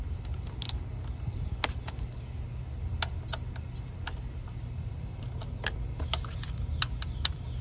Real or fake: real